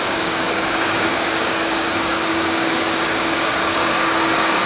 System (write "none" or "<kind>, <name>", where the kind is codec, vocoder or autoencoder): codec, DAC